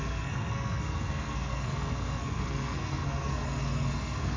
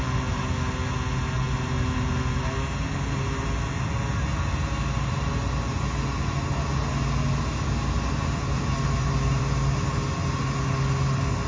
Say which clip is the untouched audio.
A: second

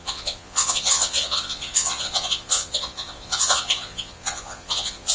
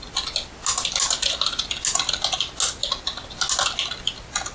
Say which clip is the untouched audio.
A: second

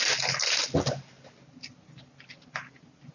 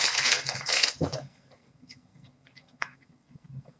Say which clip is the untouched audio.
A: first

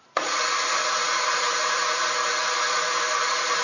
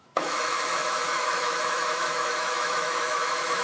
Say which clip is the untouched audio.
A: first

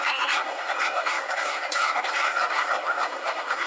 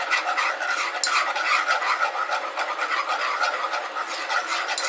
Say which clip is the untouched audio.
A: second